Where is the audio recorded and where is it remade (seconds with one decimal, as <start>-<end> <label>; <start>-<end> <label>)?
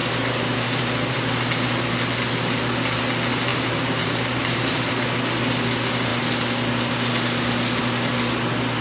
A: 0.0-3.5 recorded; 3.5-4.9 remade; 4.9-8.8 recorded